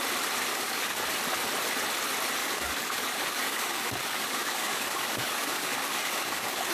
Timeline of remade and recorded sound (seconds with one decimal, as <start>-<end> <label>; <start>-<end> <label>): 0.0-0.5 recorded; 0.5-1.0 remade; 1.0-2.4 recorded; 2.4-6.7 remade